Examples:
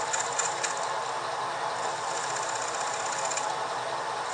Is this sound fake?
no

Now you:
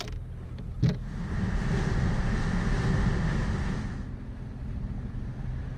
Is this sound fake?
no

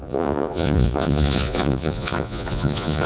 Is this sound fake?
yes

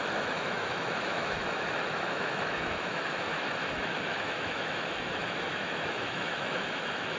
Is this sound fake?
yes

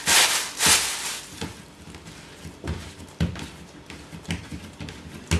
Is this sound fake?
no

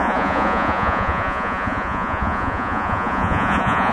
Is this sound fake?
yes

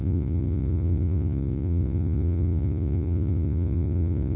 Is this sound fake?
yes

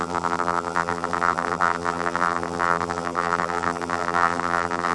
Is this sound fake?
yes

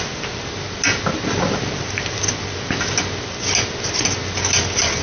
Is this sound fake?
no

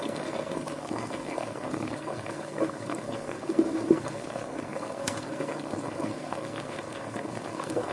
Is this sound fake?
yes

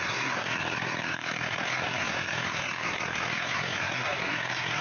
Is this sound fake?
yes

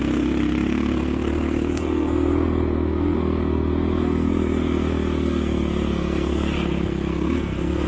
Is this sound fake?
yes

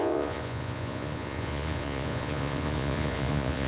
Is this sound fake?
yes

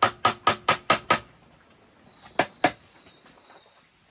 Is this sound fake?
no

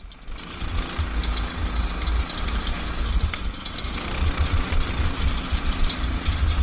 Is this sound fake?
no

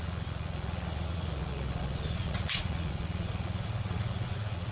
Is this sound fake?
yes